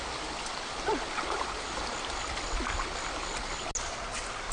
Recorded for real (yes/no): yes